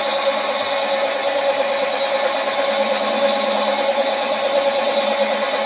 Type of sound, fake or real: real